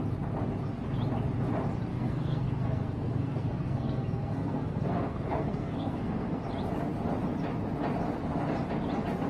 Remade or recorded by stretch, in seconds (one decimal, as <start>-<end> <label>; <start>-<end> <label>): 0.0-1.9 recorded; 1.9-6.4 remade; 6.4-9.3 recorded